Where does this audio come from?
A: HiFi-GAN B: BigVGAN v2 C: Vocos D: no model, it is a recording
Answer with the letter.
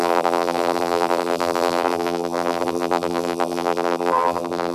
B